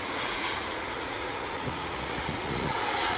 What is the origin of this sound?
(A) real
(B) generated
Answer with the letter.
B